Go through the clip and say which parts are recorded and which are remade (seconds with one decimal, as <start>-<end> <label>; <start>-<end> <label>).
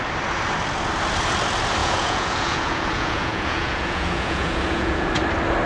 0.0-1.8 recorded; 1.8-5.2 remade; 5.2-5.7 recorded